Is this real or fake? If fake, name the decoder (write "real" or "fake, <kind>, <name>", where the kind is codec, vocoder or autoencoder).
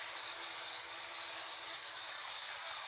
fake, codec, DAC